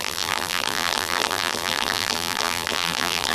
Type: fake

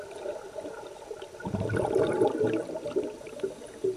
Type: real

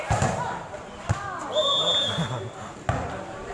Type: real